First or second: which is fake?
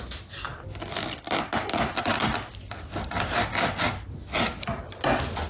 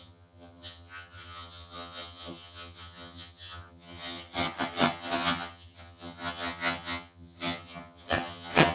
second